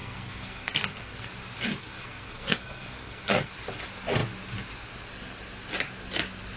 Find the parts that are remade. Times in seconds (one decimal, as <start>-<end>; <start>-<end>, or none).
0.0-1.3; 1.8-3.5